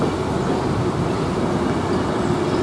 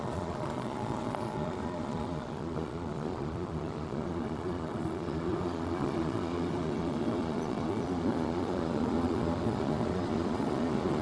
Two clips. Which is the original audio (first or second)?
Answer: first